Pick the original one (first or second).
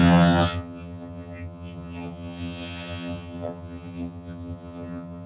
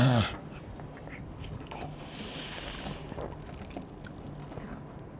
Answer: second